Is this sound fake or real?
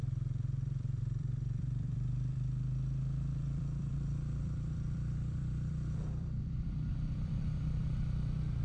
fake